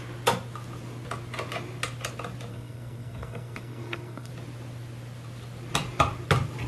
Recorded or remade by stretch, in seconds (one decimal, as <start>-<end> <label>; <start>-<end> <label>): 0.0-2.5 recorded; 2.5-4.3 remade; 4.3-6.7 recorded